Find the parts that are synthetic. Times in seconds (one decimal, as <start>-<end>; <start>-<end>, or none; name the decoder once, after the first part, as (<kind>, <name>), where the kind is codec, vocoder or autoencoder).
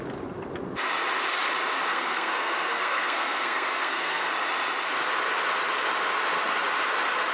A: 1.9-4.3 (codec, SNAC)